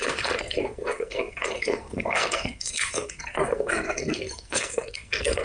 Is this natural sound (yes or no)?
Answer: no